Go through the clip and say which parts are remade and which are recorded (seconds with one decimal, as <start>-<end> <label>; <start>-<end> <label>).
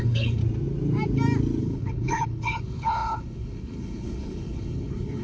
0.0-0.4 remade; 0.4-1.6 recorded; 1.6-5.2 remade